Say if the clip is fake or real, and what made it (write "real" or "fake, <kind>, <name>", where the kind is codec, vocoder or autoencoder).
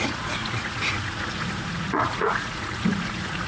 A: fake, vocoder, Vocos